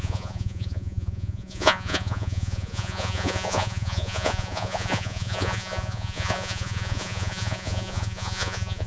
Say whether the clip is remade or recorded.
remade